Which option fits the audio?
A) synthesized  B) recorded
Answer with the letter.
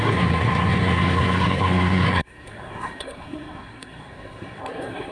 A